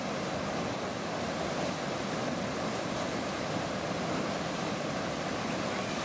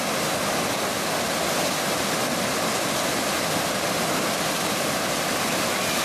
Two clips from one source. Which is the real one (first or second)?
second